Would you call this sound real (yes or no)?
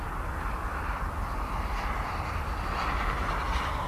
yes